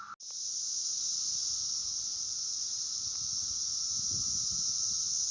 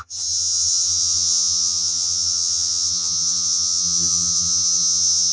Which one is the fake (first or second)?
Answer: second